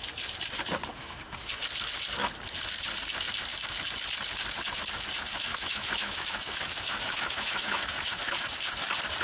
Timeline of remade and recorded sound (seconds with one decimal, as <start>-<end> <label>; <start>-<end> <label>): 0.0-0.9 recorded; 0.9-1.6 remade; 1.6-5.5 recorded; 5.5-8.6 remade; 8.6-9.2 recorded